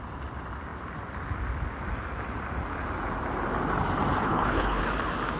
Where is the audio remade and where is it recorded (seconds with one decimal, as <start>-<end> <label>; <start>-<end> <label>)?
0.0-4.2 recorded; 4.2-4.8 remade; 4.8-5.4 recorded